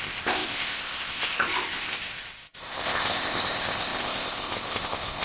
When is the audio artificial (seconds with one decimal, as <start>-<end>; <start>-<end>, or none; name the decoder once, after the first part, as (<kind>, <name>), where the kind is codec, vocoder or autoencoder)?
0.0-5.2 (codec, ZipCodec)